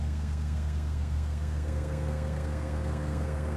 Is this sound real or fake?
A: fake